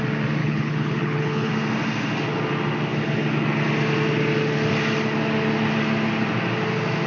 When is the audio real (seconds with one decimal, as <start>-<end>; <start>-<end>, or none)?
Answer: 0.0-0.4; 1.5-7.1